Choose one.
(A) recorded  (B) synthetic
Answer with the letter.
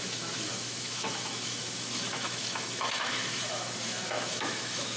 B